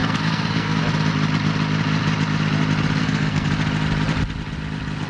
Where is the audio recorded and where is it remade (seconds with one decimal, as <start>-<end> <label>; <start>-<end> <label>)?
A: 0.0-0.8 remade; 0.8-3.0 recorded; 3.0-3.5 remade; 3.5-5.1 recorded